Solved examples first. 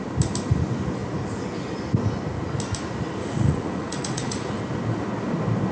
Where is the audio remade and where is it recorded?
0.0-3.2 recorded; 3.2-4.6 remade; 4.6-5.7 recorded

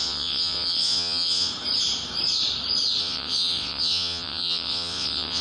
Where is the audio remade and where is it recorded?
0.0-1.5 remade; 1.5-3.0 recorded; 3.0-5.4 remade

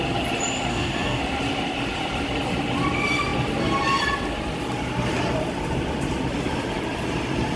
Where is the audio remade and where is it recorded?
0.0-0.7 recorded; 0.7-1.2 remade; 1.2-7.6 recorded

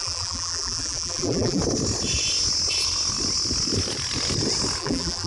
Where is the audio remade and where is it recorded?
0.0-1.6 remade; 1.6-4.8 recorded; 4.8-5.3 remade

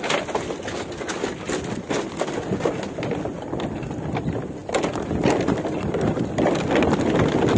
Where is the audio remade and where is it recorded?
0.0-7.6 recorded

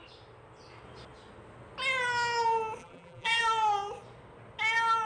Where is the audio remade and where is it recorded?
0.0-2.8 recorded; 2.8-3.4 remade; 3.4-5.1 recorded

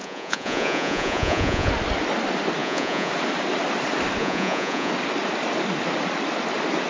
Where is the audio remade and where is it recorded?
0.0-1.7 remade; 1.7-2.6 recorded; 2.6-3.1 remade; 3.1-4.2 recorded; 4.2-4.9 remade; 4.9-6.9 recorded

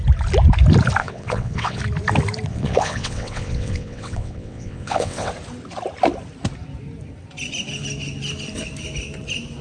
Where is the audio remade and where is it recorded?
0.0-1.0 recorded; 1.0-1.8 remade; 1.8-2.5 recorded; 2.5-5.3 remade; 5.3-9.6 recorded